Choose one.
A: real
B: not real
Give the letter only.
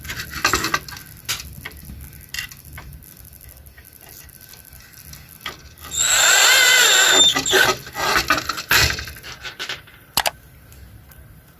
A